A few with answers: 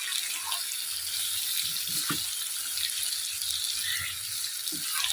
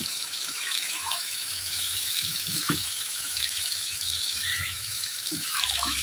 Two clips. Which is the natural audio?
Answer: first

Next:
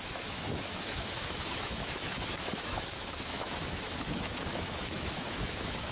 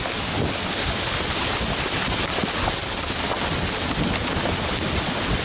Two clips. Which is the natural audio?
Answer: second